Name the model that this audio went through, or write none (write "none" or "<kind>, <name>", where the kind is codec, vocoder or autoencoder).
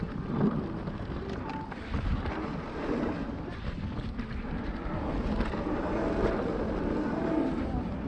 none